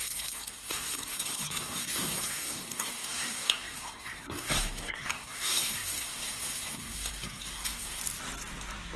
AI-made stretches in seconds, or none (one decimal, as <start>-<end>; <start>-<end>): 0.0-8.0